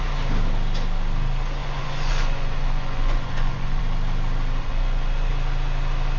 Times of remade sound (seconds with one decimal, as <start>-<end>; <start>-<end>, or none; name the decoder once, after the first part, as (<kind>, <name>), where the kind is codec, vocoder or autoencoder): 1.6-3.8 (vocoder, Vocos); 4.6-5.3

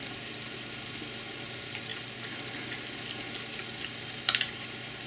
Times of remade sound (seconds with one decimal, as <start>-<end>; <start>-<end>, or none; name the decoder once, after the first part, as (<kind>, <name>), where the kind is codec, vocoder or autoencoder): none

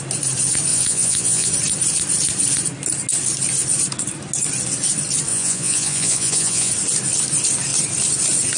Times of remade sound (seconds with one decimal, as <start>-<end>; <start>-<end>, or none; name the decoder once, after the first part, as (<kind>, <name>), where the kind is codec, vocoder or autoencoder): 0.7-1.5 (vocoder, Vocos); 5.3-6.7

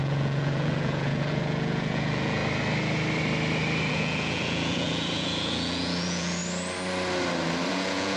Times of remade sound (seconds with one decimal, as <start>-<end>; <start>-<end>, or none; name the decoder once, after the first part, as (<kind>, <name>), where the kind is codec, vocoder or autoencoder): 0.0-2.4 (vocoder, Vocos); 3.9-6.4; 7.7-8.2